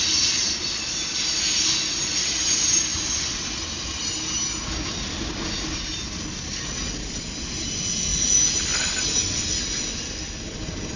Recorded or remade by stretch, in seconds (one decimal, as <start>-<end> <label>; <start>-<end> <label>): 0.0-11.0 recorded